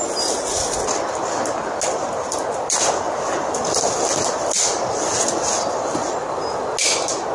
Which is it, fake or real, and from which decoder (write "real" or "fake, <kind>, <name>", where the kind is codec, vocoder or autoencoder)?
real